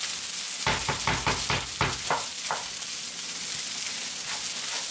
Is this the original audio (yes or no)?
yes